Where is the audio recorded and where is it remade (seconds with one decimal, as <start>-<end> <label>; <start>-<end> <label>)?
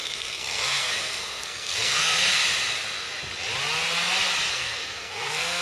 0.0-2.4 remade; 2.4-4.5 recorded; 4.5-5.6 remade